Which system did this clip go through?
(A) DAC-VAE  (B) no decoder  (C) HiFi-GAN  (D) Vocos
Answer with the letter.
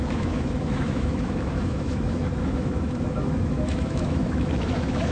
A